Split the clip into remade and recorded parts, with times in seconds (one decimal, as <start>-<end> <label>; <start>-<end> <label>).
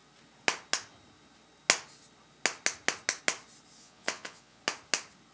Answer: 0.0-3.8 recorded; 3.8-4.6 remade; 4.6-5.3 recorded